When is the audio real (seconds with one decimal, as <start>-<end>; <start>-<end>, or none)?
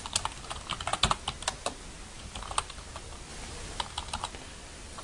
0.0-5.0